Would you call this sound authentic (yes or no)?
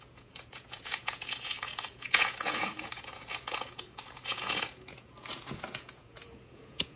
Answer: no